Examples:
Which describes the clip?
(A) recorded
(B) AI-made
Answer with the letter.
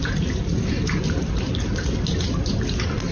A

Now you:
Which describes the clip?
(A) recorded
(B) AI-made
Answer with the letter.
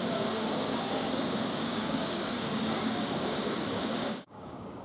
B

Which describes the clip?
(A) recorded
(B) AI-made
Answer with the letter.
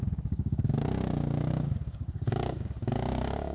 B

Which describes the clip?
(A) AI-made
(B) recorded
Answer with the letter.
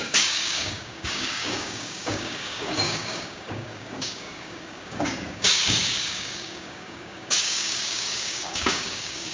A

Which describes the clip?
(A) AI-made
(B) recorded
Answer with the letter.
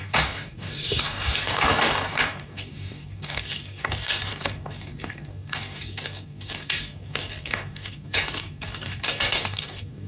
A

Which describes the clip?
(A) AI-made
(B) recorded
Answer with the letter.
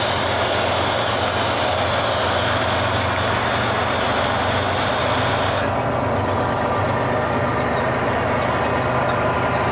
B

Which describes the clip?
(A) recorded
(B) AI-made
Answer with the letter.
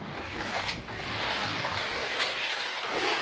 B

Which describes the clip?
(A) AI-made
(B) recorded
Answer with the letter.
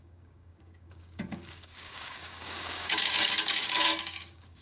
A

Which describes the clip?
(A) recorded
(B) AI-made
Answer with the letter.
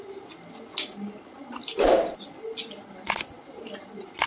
A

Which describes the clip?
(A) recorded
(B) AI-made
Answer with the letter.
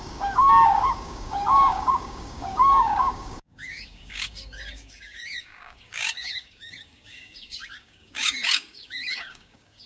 B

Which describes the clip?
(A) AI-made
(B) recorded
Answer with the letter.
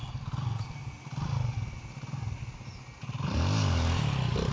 B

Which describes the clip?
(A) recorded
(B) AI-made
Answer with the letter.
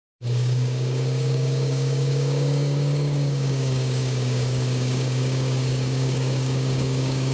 B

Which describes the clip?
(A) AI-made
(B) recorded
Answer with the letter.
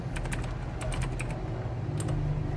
B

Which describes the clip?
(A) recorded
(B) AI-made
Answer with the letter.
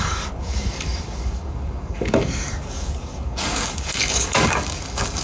B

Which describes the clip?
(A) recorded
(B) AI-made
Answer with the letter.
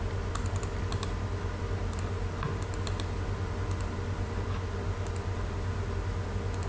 A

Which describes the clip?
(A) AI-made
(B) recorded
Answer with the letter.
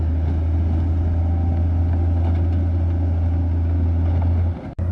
B